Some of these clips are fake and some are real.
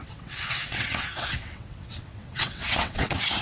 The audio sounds fake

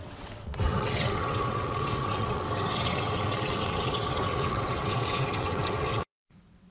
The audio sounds fake